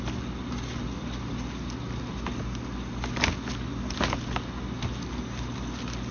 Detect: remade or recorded recorded